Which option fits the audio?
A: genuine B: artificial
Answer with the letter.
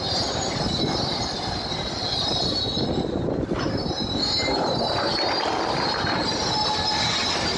A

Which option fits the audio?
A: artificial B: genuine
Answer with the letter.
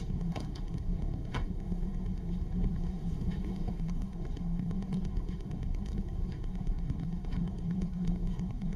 A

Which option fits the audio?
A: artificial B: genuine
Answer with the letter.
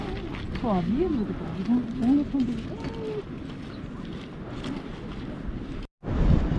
B